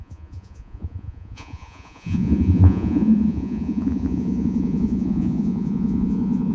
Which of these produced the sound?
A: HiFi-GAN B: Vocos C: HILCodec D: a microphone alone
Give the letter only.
B